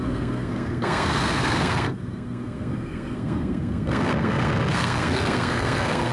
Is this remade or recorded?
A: remade